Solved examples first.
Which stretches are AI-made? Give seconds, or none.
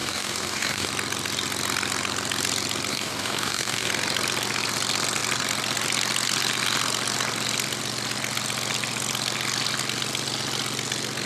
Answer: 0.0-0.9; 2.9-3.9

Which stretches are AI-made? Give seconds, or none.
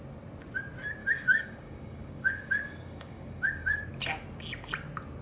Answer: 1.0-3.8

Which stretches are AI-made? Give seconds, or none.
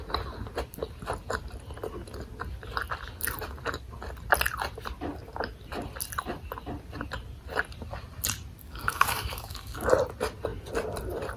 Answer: 8.6-9.9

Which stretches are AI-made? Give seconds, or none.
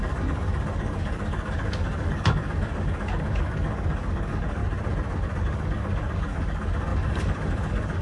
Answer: 0.0-4.6; 5.4-8.0